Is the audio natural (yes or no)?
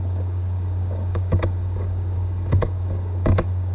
no